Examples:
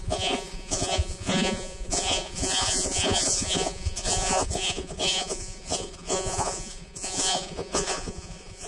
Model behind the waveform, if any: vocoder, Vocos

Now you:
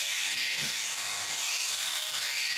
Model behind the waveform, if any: codec, DAC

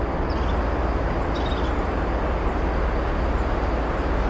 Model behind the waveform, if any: none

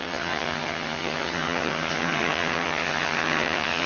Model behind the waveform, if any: vocoder, HiFi-GAN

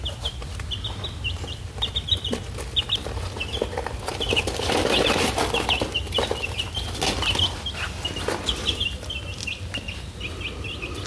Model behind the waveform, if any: vocoder, BigVGAN v2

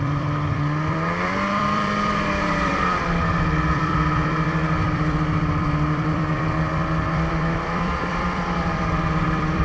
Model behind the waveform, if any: vocoder, BigVGAN v2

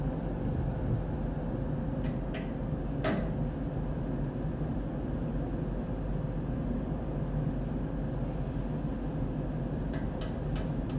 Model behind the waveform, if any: none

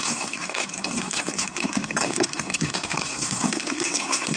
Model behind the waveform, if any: codec, SNAC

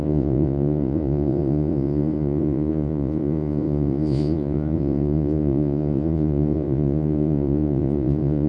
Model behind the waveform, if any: vocoder, Vocos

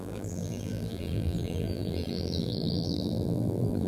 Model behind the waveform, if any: vocoder, BigVGAN v2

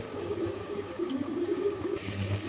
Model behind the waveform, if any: codec, DAC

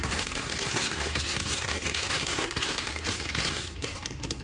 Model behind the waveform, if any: codec, SNAC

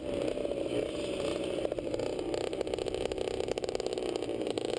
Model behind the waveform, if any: none